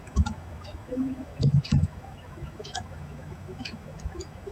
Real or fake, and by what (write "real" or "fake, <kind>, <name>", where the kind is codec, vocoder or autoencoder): fake, autoencoder, DAC-VAE